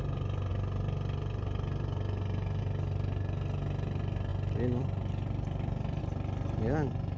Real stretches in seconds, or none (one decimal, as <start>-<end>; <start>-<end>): 0.0-0.5; 2.6-4.3; 6.0-7.2